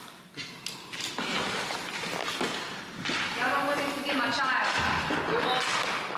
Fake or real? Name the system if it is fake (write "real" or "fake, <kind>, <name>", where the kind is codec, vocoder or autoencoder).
real